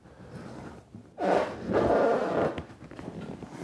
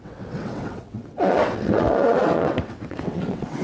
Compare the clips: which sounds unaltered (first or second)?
first